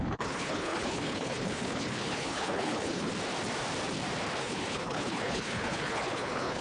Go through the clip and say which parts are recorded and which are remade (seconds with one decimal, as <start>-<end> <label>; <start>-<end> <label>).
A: 0.0-3.1 remade; 3.1-4.4 recorded; 4.4-6.6 remade